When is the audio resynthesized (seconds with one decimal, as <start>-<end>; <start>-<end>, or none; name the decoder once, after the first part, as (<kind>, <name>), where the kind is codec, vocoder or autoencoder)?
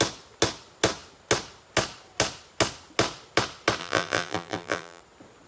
3.8-5.0 (vocoder, BigVGAN v2)